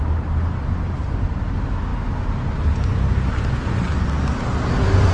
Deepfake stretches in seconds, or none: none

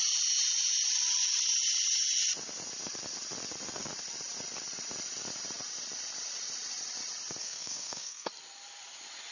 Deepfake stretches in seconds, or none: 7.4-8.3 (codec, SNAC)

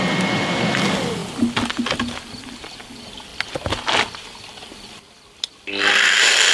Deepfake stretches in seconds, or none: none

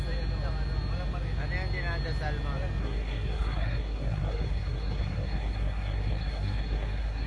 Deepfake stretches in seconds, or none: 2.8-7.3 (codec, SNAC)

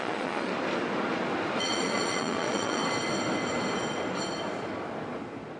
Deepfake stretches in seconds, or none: 0.0-0.5 (vocoder, Vocos); 1.6-2.8

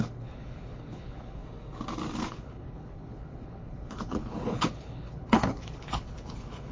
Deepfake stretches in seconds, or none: 0.0-1.4 (codec, HILCodec); 2.3-6.7

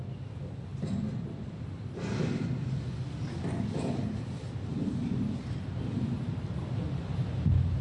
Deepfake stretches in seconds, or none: none